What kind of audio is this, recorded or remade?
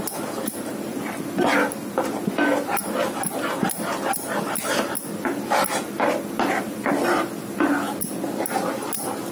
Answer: recorded